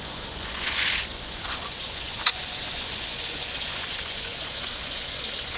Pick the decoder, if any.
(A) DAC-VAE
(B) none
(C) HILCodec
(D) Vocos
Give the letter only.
D